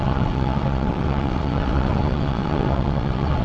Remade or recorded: remade